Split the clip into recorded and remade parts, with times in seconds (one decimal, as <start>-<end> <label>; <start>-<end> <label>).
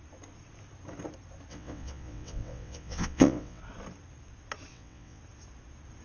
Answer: 0.0-1.5 recorded; 1.5-3.6 remade; 3.6-4.7 recorded; 4.7-5.2 remade; 5.2-6.0 recorded